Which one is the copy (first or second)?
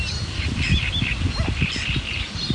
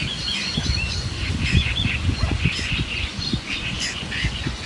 second